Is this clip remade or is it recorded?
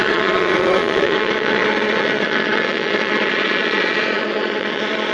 remade